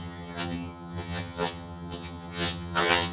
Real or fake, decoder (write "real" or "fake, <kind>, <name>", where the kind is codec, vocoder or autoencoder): fake, vocoder, HiFi-GAN